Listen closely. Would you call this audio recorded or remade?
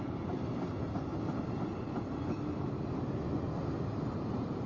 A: recorded